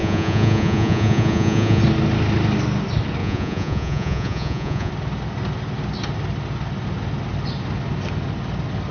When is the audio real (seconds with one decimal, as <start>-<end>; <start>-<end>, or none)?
1.8-3.2; 4.9-8.9